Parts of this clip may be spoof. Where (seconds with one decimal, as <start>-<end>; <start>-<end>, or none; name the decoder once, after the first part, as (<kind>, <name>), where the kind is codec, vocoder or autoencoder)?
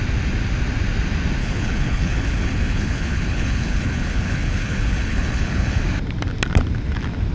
1.4-5.8 (codec, HILCodec)